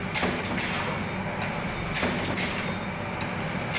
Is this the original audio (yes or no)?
yes